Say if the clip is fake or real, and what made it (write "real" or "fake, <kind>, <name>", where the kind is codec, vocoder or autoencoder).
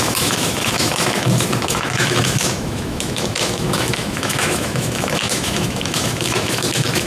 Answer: fake, autoencoder, DAC-VAE